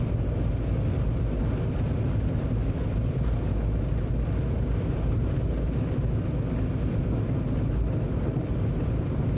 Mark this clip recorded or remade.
recorded